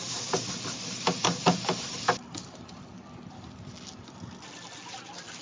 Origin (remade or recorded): recorded